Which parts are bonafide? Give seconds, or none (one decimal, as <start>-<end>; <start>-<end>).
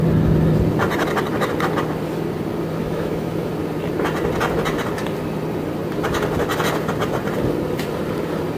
0.0-2.8; 3.5-8.6